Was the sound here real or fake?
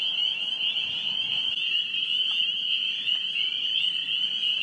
real